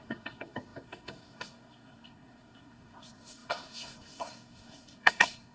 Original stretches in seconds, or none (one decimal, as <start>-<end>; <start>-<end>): none